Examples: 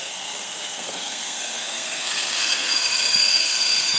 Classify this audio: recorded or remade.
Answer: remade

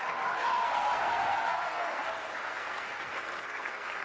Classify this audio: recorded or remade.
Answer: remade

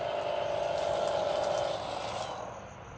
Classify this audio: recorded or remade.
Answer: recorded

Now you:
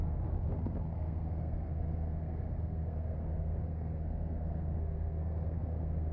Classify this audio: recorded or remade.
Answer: remade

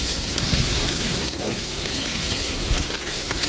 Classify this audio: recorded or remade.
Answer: remade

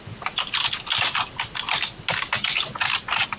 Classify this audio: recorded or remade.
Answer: recorded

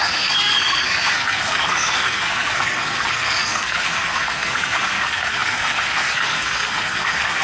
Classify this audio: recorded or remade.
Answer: remade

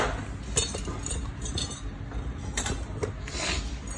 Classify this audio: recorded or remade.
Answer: recorded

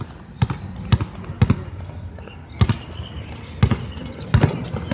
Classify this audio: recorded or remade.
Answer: recorded